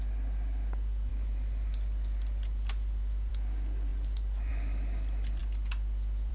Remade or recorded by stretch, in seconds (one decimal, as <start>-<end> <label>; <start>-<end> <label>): 0.0-1.1 recorded; 1.1-3.3 remade; 3.3-3.9 recorded; 3.9-4.5 remade; 4.5-6.3 recorded